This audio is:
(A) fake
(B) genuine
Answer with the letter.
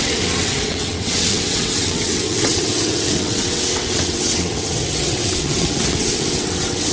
A